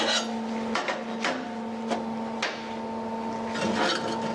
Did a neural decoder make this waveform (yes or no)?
no